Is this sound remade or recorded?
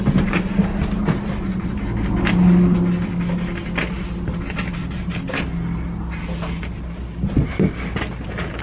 recorded